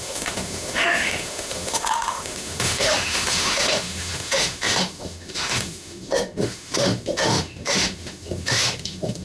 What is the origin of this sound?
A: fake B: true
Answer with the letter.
A